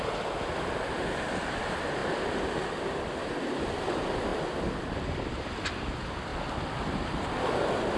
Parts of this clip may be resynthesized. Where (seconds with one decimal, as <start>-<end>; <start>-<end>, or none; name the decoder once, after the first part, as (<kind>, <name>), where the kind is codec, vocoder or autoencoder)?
none